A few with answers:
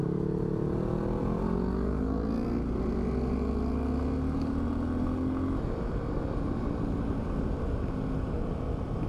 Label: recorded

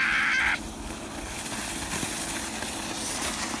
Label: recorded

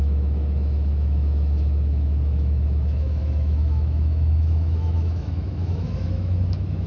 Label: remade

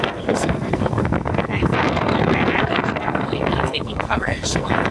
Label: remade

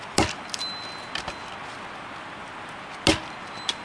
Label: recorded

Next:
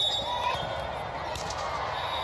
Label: recorded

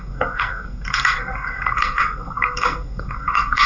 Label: remade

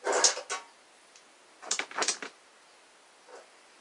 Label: recorded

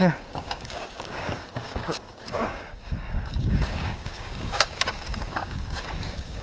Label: remade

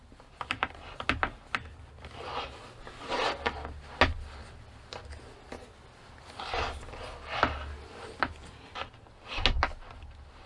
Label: recorded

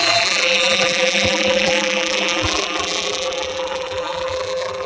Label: remade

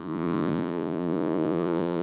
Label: remade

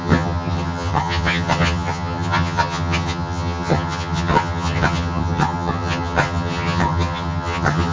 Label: remade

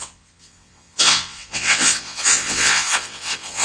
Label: remade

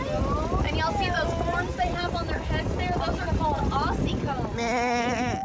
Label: recorded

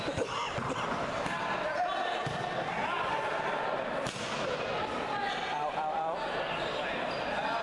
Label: remade